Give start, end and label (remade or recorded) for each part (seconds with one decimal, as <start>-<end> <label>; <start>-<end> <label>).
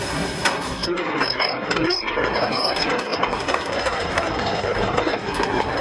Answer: 0.0-5.8 remade